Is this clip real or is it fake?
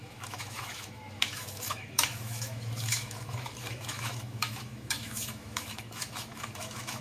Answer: fake